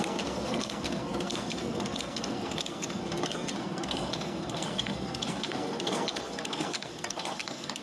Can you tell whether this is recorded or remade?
remade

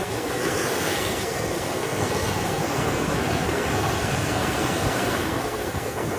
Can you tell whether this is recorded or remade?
remade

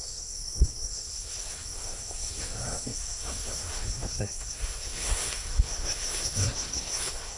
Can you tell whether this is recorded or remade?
remade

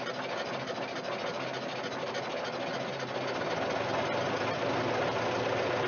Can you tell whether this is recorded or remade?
recorded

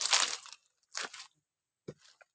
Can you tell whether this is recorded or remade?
recorded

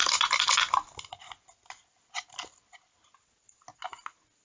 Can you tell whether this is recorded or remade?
recorded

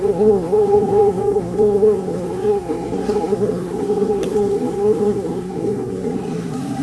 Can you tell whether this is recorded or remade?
remade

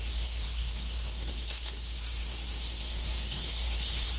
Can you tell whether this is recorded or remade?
remade